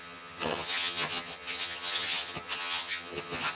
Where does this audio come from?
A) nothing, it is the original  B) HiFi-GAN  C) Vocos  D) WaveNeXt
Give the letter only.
B